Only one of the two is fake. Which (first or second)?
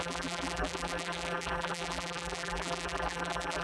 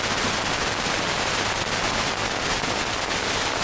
first